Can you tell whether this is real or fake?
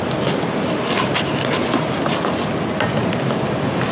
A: real